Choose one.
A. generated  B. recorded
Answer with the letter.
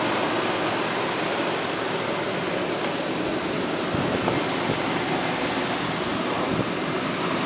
B